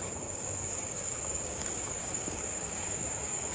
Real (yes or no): no